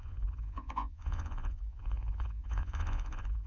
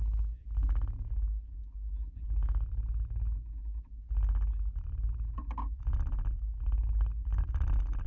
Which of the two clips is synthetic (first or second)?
first